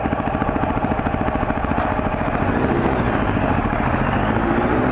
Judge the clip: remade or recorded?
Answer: recorded